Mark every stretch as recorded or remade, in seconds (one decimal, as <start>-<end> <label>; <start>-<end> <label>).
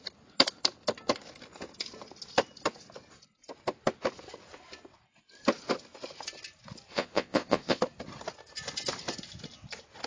0.0-6.9 recorded; 6.9-7.8 remade; 7.8-10.1 recorded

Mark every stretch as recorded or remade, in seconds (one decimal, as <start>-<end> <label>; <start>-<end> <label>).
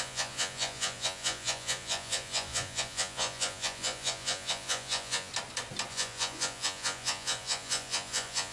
0.0-5.3 remade; 5.3-5.9 recorded; 5.9-8.5 remade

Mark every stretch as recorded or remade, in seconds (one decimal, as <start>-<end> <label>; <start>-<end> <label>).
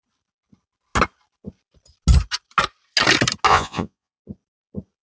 0.0-3.5 recorded; 3.5-4.2 remade; 4.2-5.0 recorded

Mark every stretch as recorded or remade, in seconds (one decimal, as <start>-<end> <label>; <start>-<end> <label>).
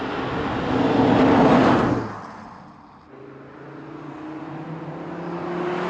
0.0-5.9 recorded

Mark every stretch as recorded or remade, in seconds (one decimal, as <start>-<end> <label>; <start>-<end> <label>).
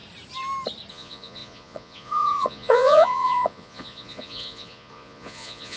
0.0-0.9 recorded; 0.9-5.8 remade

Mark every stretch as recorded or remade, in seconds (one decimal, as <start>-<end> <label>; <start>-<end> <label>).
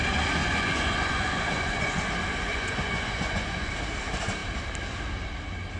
0.0-0.4 recorded; 0.4-2.0 remade; 2.0-2.5 recorded; 2.5-3.7 remade; 3.7-5.8 recorded